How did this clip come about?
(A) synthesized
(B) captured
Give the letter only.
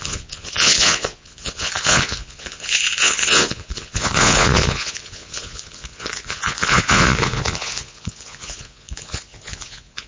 A